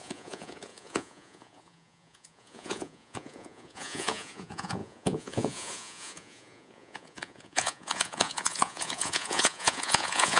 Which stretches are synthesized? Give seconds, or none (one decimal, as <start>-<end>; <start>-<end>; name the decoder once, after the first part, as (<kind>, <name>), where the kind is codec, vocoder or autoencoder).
0.0-10.4 (vocoder, Vocos)

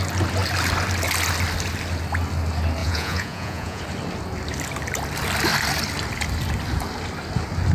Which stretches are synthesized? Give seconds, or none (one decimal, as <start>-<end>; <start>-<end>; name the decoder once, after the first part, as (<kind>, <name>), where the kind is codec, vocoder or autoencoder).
2.8-3.8 (vocoder, Vocos)